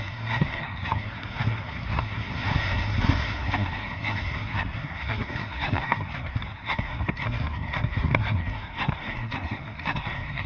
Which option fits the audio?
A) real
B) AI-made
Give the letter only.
B